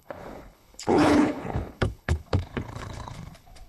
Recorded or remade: remade